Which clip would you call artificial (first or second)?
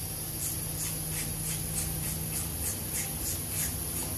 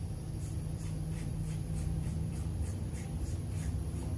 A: second